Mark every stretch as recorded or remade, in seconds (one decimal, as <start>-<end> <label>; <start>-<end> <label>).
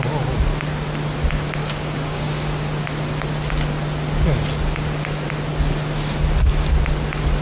0.0-1.6 recorded; 1.6-2.3 remade; 2.3-7.4 recorded